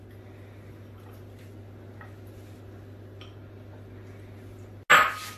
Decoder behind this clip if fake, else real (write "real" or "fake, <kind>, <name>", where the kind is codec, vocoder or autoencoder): real